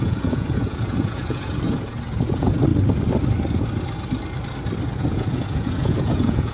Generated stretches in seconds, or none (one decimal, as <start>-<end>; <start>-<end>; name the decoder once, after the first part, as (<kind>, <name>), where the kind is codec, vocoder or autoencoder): 0.0-2.7 (vocoder, Vocos); 5.0-6.5